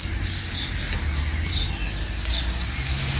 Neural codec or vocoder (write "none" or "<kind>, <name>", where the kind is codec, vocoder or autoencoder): none